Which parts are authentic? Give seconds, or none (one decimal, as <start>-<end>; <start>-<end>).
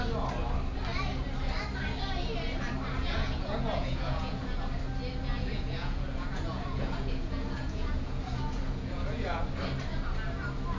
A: 0.0-3.0; 4.4-5.3; 9.4-10.8